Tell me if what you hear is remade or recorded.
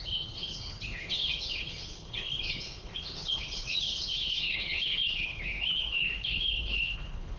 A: remade